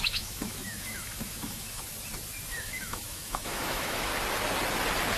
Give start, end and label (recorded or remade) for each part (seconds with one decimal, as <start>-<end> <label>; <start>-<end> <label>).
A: 0.0-1.9 remade; 1.9-2.5 recorded; 2.5-4.1 remade; 4.1-5.2 recorded